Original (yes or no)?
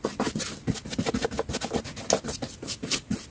yes